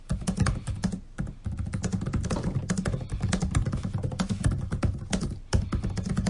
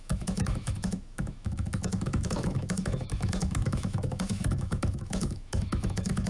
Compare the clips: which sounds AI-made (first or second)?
second